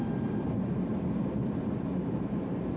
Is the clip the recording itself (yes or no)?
yes